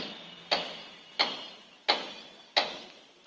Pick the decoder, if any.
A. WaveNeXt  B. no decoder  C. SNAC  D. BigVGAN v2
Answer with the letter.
B